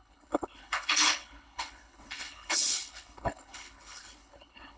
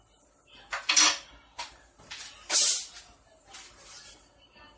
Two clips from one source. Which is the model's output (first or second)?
first